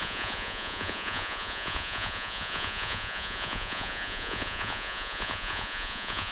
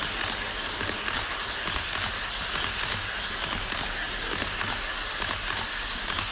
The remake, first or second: first